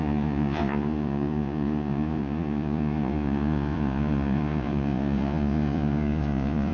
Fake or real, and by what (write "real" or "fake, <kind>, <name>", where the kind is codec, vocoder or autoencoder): fake, vocoder, Vocos